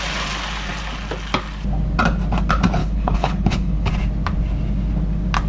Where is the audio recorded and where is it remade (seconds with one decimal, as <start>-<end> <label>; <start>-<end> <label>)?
0.0-2.8 recorded; 2.8-3.9 remade; 3.9-5.5 recorded